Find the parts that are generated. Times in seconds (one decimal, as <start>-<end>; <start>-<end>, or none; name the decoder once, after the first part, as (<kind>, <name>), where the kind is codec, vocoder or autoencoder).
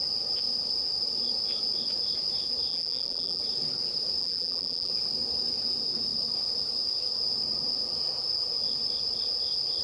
2.7-3.4 (vocoder, BigVGAN v2); 4.2-4.9